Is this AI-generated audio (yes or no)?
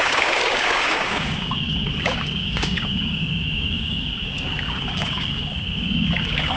yes